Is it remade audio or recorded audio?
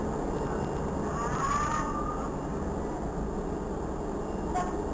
recorded